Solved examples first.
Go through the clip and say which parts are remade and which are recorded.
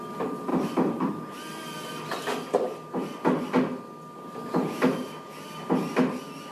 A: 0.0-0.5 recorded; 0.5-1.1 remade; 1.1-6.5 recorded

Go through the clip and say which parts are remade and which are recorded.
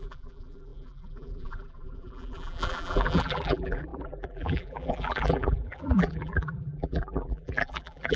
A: 0.0-8.2 remade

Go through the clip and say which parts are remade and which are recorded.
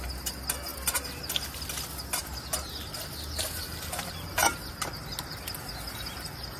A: 0.0-6.6 recorded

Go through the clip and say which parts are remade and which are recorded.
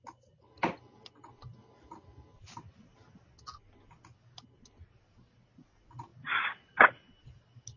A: 0.0-7.8 recorded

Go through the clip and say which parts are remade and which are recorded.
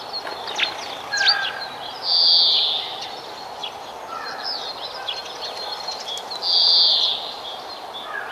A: 0.0-8.3 recorded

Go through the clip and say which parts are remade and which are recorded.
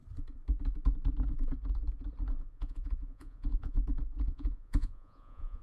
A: 0.0-2.5 recorded; 2.5-3.8 remade; 3.8-4.3 recorded; 4.3-5.6 remade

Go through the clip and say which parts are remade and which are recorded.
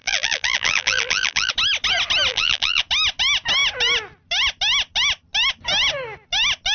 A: 0.0-1.5 remade; 1.5-2.3 recorded; 2.3-2.8 remade; 2.8-6.7 recorded